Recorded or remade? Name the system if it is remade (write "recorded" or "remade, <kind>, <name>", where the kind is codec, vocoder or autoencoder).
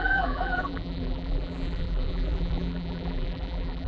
remade, vocoder, BigVGAN v2